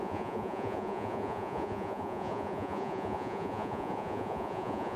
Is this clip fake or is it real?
fake